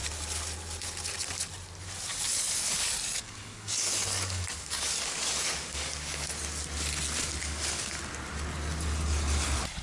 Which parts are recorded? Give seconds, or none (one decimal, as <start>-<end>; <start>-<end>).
0.0-2.1; 6.3-7.4; 8.0-9.8